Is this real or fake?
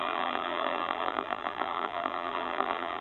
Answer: fake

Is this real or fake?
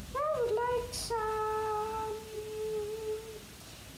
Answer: real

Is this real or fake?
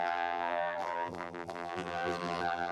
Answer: fake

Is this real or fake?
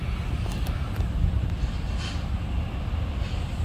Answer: real